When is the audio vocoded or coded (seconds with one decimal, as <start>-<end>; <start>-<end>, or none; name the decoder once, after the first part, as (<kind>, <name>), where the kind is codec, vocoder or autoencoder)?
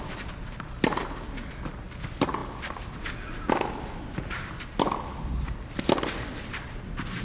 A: none